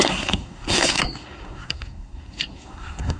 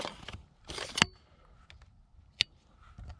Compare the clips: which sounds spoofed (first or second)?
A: first